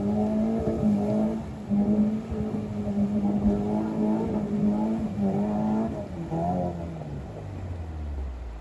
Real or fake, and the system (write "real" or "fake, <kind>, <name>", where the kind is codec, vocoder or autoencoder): real